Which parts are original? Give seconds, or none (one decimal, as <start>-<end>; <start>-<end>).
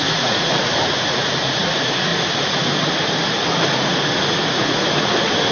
2.1-3.7